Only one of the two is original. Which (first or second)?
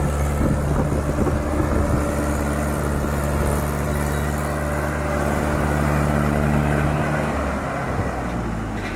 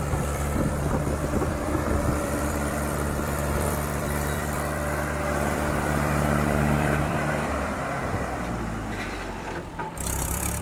first